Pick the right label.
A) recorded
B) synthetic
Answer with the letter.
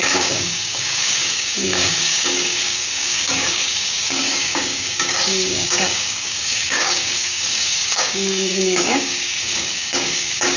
B